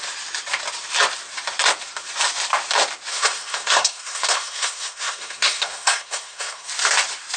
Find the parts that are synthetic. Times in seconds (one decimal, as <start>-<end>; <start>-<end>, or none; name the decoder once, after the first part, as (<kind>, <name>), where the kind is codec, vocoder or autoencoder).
3.1-6.7 (codec, SNAC)